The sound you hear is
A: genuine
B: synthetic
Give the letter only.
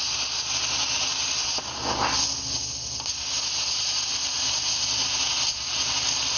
A